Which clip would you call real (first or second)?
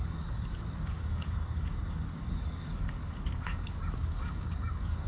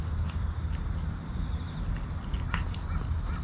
second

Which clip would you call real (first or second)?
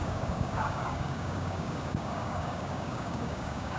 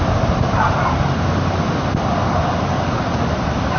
second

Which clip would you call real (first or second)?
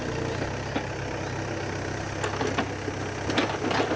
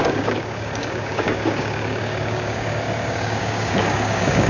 first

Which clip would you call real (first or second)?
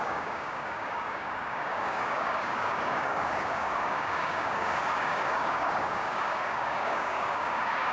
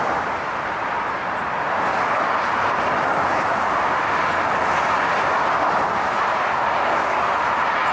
second